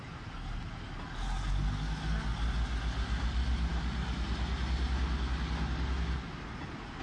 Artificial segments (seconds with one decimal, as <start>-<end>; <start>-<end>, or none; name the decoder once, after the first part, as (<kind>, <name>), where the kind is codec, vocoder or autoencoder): none